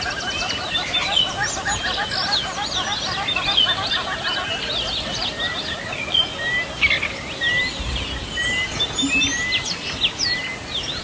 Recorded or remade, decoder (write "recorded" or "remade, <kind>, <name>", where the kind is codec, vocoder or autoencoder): recorded